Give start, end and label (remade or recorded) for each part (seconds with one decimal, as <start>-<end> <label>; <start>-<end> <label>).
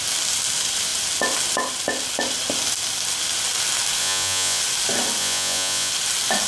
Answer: 0.0-4.0 recorded; 4.0-4.6 remade; 4.6-5.2 recorded; 5.2-5.9 remade; 5.9-6.5 recorded